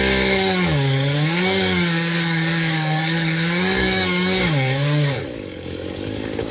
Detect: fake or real fake